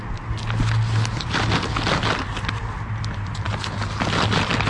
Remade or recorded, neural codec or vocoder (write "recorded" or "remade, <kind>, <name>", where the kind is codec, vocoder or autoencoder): recorded